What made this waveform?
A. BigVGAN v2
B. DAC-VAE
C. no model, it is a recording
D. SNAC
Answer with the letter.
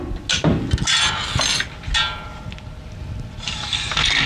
C